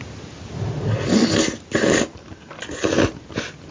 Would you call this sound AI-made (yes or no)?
no